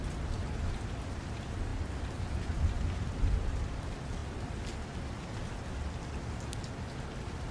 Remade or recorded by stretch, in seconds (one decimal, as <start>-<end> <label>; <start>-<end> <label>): 0.0-7.5 recorded